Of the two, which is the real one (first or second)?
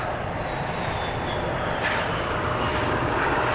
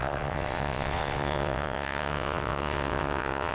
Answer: first